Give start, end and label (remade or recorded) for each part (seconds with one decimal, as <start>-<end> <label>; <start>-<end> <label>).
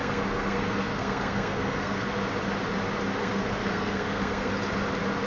0.0-2.0 remade; 2.0-3.2 recorded; 3.2-4.5 remade; 4.5-5.3 recorded